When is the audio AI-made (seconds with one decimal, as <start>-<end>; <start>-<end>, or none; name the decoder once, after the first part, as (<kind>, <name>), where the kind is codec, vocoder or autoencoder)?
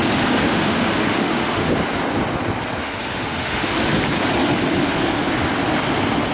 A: 0.4-1.7 (autoencoder, DAC-VAE); 2.8-4.0